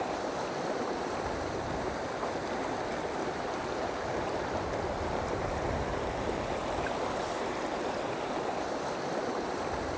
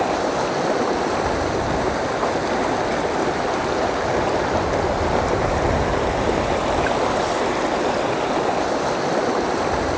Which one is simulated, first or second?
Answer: first